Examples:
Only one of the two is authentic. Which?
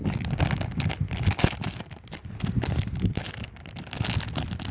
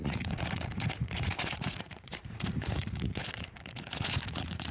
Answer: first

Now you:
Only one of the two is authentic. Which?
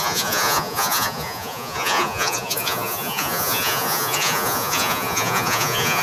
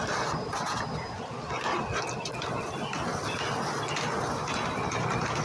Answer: second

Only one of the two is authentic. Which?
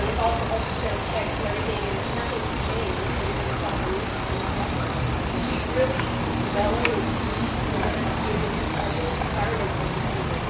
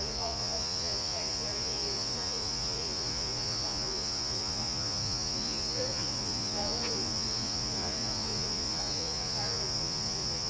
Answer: first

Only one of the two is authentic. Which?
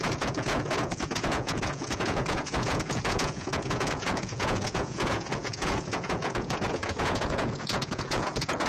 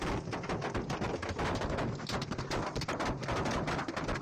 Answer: second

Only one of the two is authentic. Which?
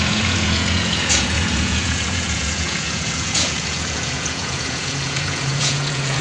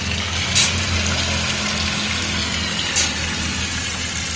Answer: second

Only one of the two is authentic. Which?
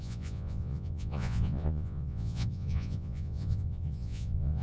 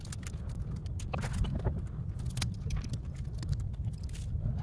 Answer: second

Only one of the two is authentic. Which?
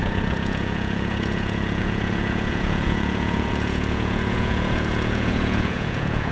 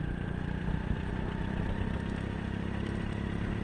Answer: second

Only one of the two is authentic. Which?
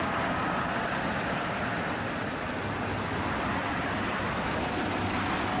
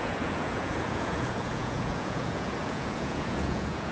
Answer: first